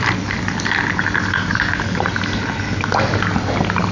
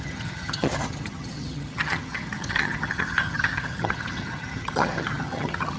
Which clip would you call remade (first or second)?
second